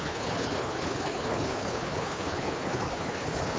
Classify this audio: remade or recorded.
remade